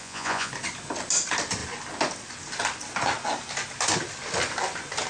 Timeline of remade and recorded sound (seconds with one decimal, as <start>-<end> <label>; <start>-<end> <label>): 0.0-0.5 remade; 0.5-5.1 recorded